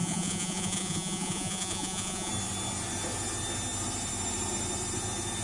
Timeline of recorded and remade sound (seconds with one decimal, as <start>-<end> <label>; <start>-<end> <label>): 0.0-2.3 remade; 2.3-5.4 recorded